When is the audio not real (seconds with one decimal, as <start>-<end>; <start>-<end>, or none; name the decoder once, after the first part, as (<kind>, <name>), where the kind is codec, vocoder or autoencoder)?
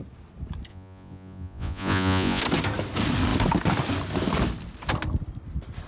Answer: 0.7-2.4 (vocoder, Vocos)